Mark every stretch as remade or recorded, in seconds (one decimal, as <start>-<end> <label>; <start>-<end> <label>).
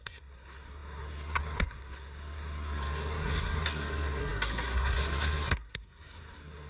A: 0.0-6.7 remade